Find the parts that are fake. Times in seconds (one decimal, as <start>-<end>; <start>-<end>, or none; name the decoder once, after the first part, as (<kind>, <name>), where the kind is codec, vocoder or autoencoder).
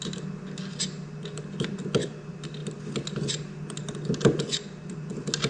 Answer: none